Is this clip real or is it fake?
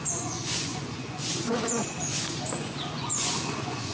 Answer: fake